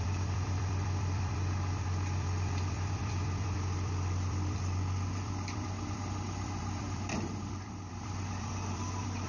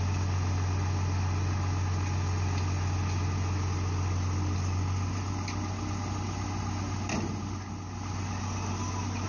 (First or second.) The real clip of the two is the second